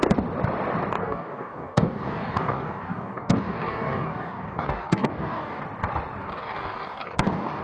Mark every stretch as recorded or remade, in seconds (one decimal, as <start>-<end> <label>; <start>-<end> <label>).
0.0-1.0 recorded; 1.0-5.6 remade; 5.6-6.2 recorded; 6.2-7.6 remade